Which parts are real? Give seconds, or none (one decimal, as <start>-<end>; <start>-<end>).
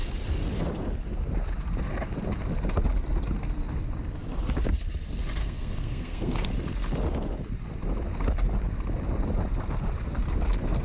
0.0-5.4; 6.5-10.8